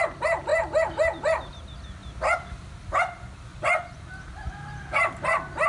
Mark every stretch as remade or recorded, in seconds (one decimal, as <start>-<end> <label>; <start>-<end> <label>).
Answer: 0.0-3.5 recorded; 3.5-4.0 remade; 4.0-5.7 recorded